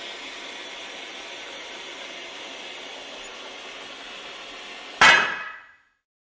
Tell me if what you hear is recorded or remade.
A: recorded